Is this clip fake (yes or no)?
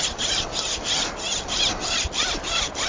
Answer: no